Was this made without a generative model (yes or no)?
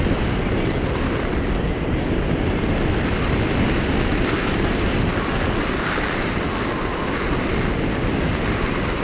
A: yes